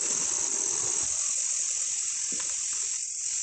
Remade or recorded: recorded